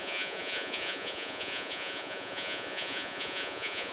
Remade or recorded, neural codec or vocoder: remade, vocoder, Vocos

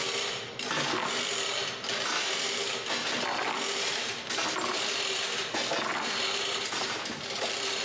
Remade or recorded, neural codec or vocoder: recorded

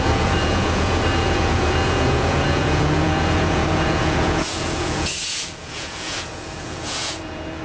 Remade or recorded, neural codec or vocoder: remade, vocoder, Vocos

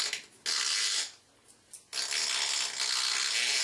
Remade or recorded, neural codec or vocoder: recorded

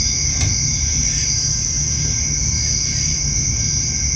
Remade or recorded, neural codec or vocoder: recorded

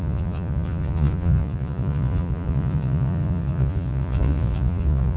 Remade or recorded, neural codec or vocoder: remade, vocoder, Vocos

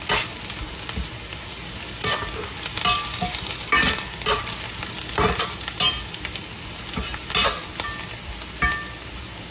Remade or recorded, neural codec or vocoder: recorded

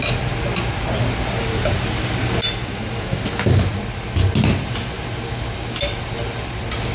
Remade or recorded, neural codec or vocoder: recorded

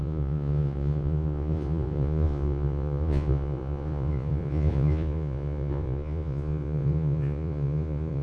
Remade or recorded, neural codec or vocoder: remade, vocoder, Vocos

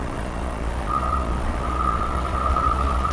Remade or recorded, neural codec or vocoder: remade, vocoder, Vocos